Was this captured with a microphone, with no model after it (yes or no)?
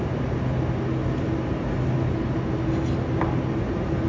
yes